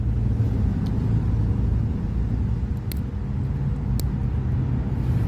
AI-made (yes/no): no